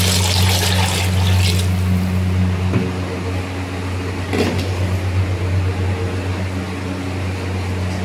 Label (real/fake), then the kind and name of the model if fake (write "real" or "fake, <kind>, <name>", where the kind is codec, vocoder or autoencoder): real